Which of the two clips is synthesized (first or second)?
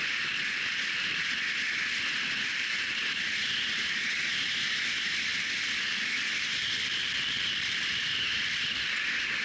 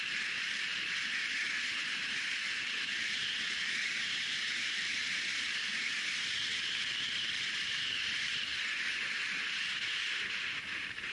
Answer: second